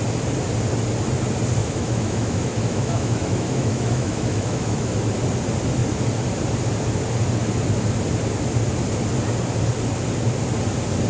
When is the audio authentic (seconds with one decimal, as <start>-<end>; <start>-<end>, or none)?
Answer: 0.0-1.6; 5.1-11.1